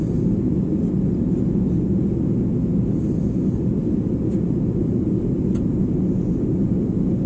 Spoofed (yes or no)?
no